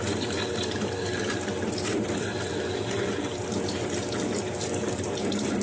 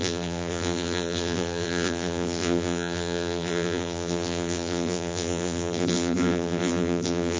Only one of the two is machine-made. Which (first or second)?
second